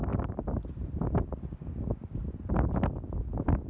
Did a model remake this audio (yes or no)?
no